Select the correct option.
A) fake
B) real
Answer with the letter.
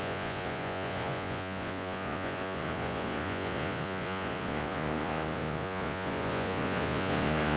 A